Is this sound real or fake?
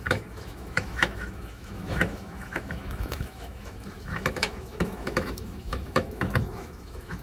fake